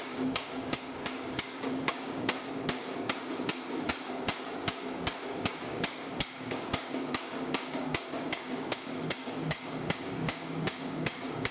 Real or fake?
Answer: fake